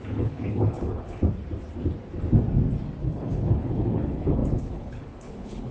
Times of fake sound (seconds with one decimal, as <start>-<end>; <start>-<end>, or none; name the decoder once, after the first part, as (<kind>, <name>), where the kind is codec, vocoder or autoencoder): 0.0-1.2 (codec, HILCodec); 3.0-5.7